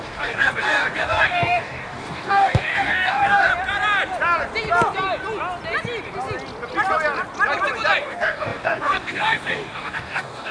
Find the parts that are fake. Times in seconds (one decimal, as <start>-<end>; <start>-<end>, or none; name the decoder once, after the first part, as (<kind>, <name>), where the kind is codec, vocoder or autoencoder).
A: 0.0-3.5 (codec, DAC); 8.0-10.5